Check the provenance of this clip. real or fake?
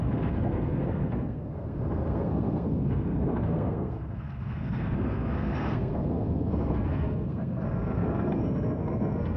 fake